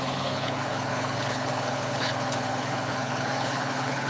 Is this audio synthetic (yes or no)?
yes